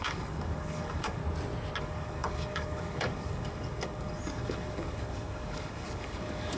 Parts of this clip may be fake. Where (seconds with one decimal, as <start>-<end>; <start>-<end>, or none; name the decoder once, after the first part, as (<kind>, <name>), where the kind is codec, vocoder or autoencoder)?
0.0-1.2 (codec, DAC); 1.8-6.6